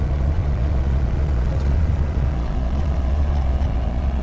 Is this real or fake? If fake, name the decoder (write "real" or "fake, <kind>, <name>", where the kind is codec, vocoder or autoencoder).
fake, vocoder, Vocos